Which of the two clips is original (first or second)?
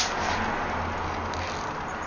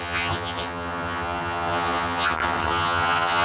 first